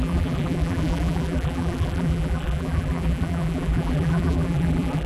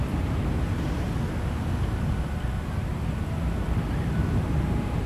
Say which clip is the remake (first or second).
first